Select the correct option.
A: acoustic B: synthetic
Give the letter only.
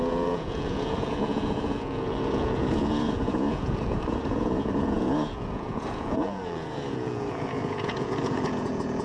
B